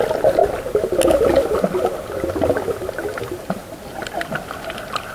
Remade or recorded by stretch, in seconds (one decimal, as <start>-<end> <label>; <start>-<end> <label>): 0.0-5.1 recorded